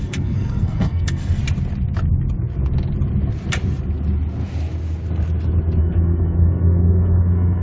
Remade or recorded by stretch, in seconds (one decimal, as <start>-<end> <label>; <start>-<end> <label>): 0.0-1.4 remade; 1.4-5.8 recorded; 5.8-7.6 remade